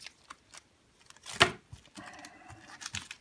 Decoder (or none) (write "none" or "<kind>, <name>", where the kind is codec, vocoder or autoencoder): none